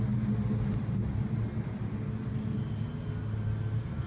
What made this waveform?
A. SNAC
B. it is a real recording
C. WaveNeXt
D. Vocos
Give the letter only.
B